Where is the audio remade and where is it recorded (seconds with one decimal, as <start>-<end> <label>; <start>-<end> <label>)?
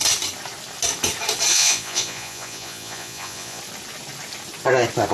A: 0.0-1.5 recorded; 1.5-3.6 remade; 3.6-5.1 recorded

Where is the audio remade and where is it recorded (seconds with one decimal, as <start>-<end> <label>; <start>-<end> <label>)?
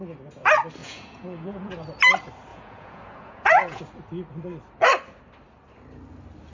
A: 0.0-0.8 recorded; 0.8-1.7 remade; 1.7-2.5 recorded; 2.5-3.8 remade; 3.8-6.5 recorded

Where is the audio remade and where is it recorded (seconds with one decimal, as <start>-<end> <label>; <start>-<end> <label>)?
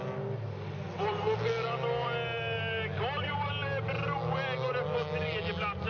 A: 0.0-5.9 recorded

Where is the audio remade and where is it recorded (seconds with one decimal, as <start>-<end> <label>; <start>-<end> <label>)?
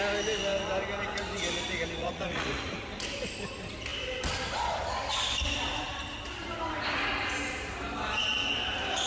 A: 0.0-2.0 recorded; 2.0-2.7 remade; 2.7-9.1 recorded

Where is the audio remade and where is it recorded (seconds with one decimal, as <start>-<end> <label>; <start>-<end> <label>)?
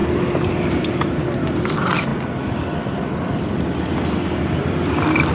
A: 0.0-5.3 recorded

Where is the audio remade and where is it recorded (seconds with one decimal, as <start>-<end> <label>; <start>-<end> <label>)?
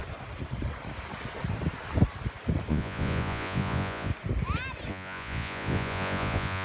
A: 0.0-2.7 recorded; 2.7-4.1 remade; 4.1-4.9 recorded; 4.9-6.6 remade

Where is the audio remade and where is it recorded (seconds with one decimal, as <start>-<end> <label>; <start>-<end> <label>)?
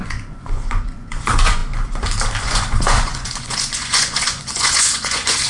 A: 0.0-1.6 remade; 1.6-2.4 recorded; 2.4-5.5 remade